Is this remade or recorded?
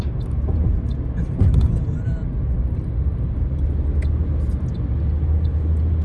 recorded